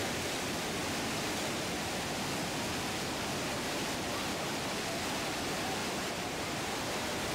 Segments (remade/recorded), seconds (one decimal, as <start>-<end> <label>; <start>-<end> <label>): 0.0-5.8 recorded; 5.8-6.4 remade; 6.4-7.3 recorded